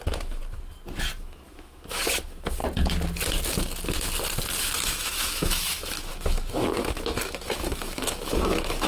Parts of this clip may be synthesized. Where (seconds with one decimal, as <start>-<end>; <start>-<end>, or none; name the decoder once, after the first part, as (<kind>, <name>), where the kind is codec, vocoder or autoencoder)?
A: 0.0-0.4 (autoencoder, DAC-VAE); 1.2-2.6; 4.6-8.9